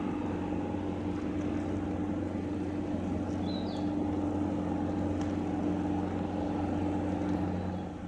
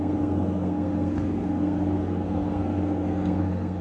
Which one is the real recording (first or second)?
first